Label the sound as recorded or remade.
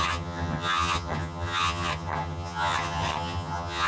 remade